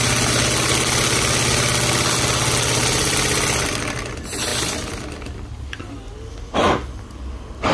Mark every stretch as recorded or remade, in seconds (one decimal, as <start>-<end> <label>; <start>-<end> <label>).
0.0-7.7 recorded